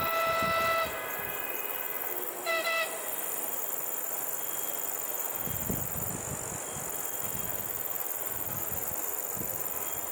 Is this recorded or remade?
recorded